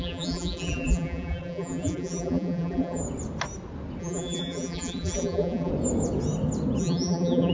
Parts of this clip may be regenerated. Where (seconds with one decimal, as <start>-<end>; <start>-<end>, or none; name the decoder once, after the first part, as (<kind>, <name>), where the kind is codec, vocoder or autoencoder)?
0.0-3.0 (vocoder, BigVGAN v2); 4.0-5.7; 6.8-7.5